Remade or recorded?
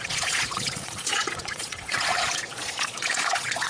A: remade